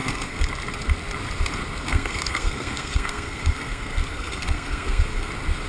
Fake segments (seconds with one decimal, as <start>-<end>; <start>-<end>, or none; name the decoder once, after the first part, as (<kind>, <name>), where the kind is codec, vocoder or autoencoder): 0.0-0.5 (codec, SNAC); 1.9-5.3